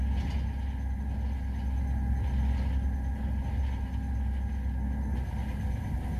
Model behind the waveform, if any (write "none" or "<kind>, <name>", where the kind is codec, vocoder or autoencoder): none